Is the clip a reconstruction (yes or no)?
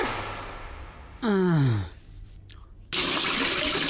no